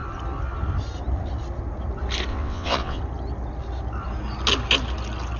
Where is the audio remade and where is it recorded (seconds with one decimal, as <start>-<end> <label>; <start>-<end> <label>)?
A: 0.0-2.3 recorded; 2.3-3.0 remade; 3.0-5.4 recorded